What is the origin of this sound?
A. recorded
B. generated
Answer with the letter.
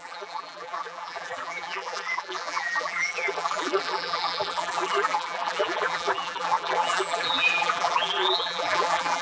B